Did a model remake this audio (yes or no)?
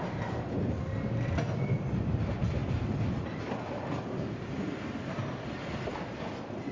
no